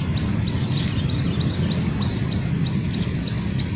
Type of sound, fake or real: real